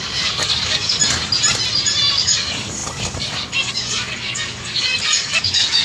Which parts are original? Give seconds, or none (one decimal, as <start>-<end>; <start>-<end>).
1.0-2.1